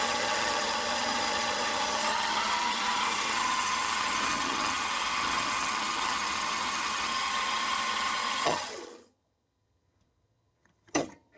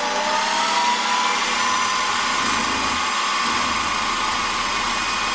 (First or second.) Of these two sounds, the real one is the second